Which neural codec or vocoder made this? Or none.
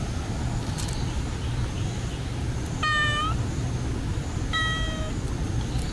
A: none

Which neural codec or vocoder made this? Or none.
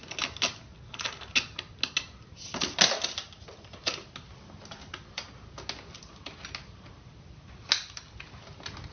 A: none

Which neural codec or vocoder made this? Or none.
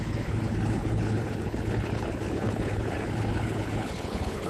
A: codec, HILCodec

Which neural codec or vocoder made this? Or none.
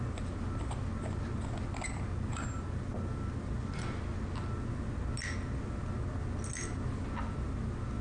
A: none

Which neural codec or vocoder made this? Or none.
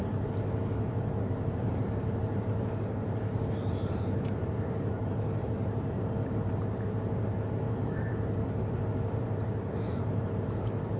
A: vocoder, BigVGAN v2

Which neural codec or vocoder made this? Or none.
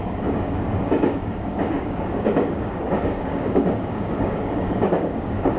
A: codec, DAC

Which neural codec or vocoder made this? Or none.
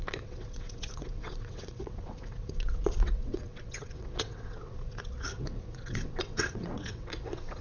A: vocoder, WaveNeXt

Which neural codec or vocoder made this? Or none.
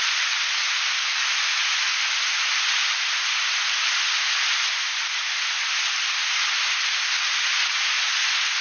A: none